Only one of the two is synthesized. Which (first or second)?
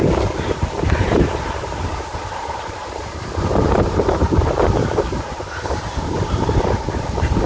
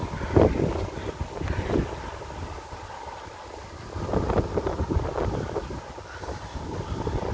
first